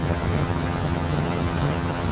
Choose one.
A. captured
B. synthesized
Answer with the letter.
B